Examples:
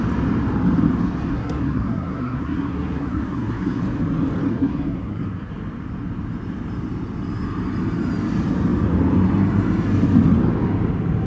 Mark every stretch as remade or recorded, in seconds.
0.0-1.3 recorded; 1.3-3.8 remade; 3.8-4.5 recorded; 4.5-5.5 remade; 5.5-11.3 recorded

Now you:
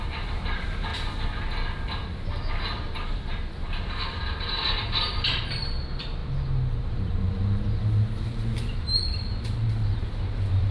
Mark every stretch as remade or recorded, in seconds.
0.0-0.9 remade; 0.9-2.7 recorded; 2.7-10.7 remade